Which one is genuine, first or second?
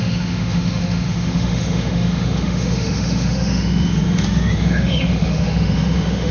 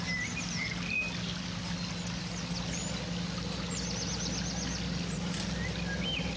second